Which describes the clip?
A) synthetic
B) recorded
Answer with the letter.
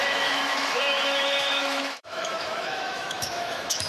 A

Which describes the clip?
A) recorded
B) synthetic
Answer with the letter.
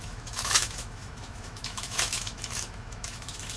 B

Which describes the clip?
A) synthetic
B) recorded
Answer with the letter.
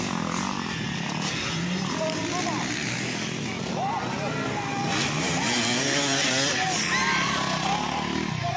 B